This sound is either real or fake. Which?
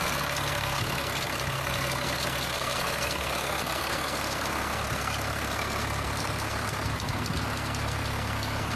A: fake